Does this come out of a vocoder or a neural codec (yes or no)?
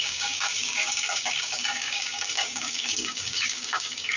yes